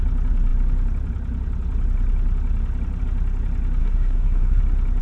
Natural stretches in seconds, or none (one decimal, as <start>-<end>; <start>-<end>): 0.0-3.8; 4.6-5.0